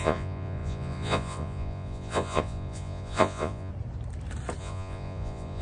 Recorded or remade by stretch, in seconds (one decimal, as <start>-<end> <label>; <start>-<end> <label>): 0.0-3.7 remade; 3.7-4.6 recorded; 4.6-5.6 remade